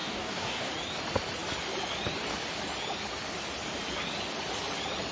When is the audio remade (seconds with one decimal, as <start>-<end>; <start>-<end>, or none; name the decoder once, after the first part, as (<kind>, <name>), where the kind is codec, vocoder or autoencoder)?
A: 0.0-0.7 (codec, DAC)